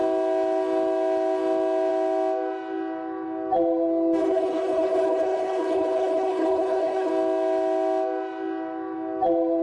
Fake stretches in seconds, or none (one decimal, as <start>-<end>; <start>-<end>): 4.2-7.1